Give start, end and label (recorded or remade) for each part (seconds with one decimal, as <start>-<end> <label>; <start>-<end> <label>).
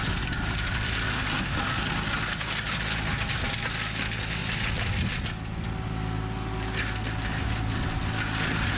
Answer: 0.0-8.8 recorded